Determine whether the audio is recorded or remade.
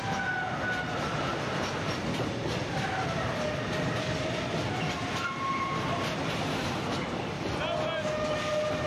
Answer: recorded